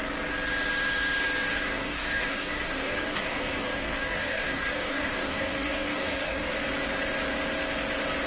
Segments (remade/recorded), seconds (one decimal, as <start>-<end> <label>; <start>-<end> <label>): 0.0-1.5 recorded; 1.5-6.5 remade; 6.5-8.3 recorded